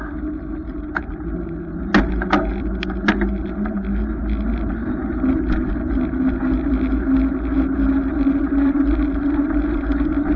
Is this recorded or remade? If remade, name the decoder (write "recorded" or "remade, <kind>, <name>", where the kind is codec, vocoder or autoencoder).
recorded